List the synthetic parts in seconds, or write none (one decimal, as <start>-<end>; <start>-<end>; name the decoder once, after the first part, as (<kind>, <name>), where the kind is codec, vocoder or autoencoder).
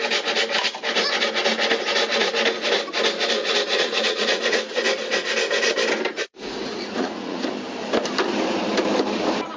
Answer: 3.4-4.8 (vocoder, Vocos); 6.3-7.4